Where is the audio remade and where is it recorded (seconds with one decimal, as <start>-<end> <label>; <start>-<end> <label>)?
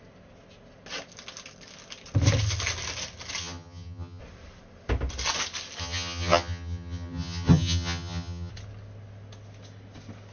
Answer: 0.0-3.4 recorded; 3.4-4.2 remade; 4.2-5.8 recorded; 5.8-8.5 remade; 8.5-10.3 recorded